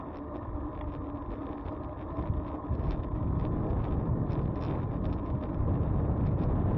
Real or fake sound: real